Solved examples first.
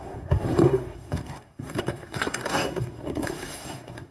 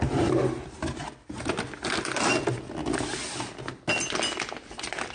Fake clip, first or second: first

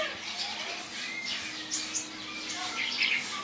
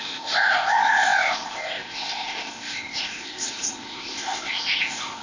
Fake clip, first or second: second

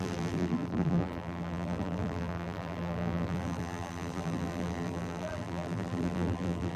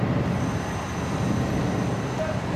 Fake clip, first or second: first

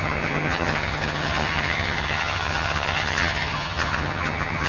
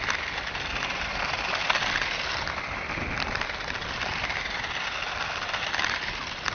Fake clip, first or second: first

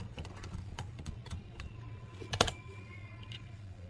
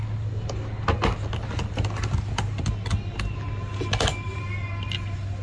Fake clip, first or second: first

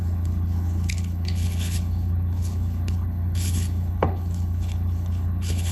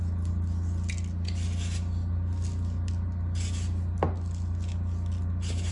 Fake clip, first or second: first